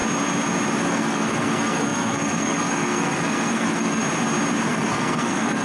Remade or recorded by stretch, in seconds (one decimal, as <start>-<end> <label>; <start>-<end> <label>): 0.0-0.9 recorded; 0.9-4.0 remade; 4.0-4.7 recorded; 4.7-5.6 remade